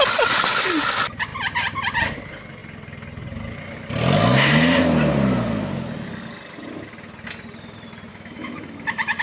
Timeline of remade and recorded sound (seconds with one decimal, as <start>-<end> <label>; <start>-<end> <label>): 0.0-8.1 recorded; 8.1-9.2 remade